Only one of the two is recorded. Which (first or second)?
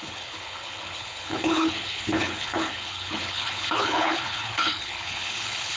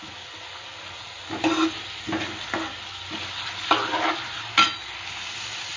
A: second